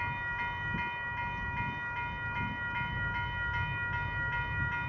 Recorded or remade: recorded